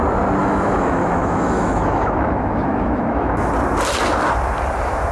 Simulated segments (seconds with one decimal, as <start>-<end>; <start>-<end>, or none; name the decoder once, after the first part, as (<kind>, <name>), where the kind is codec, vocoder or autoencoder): 0.4-3.5 (autoencoder, DAC-VAE)